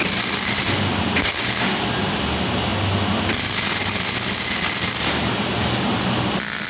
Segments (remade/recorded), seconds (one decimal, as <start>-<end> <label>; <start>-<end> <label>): 0.0-6.7 recorded